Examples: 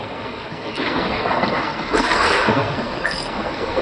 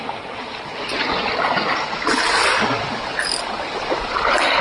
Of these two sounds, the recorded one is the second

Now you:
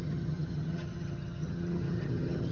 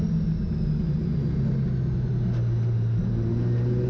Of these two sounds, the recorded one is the second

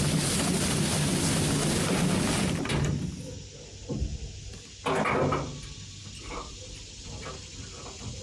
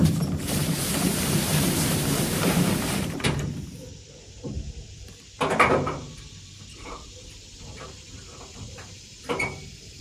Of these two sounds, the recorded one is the first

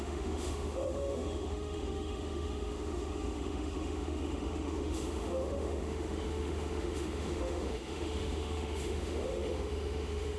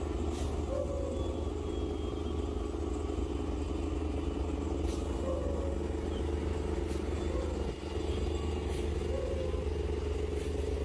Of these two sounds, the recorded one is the second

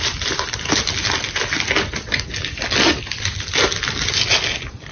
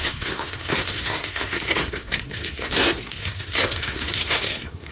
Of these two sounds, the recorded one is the first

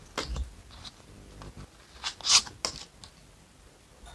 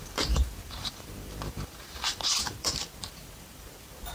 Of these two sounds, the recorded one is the first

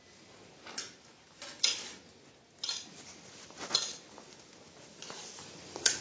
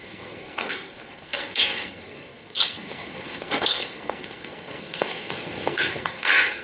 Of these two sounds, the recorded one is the first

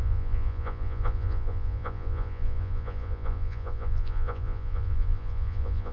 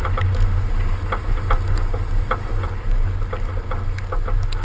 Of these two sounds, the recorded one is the second